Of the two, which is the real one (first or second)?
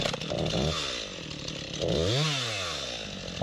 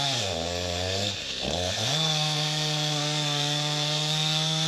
first